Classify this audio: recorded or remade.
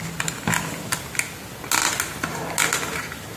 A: recorded